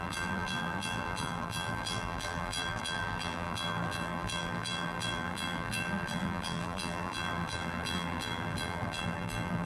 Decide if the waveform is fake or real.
fake